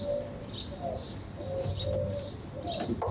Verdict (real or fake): real